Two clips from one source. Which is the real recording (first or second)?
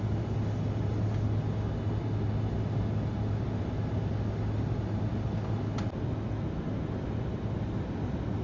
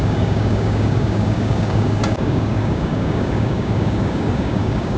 first